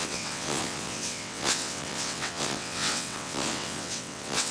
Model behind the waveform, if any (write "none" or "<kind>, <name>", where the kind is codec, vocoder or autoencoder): vocoder, WaveNeXt